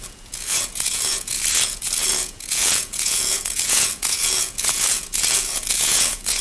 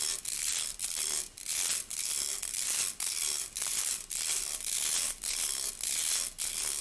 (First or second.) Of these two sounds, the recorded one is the second